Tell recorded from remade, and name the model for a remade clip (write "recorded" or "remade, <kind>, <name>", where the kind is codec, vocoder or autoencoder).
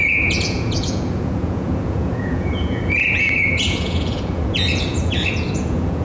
remade, vocoder, Vocos